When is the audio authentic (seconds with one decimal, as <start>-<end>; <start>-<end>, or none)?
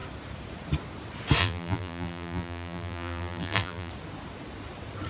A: 0.0-1.4; 3.9-5.1